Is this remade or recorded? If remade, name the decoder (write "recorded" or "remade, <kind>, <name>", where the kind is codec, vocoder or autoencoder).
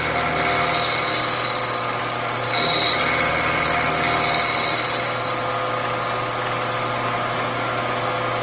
recorded